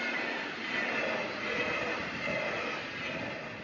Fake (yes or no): no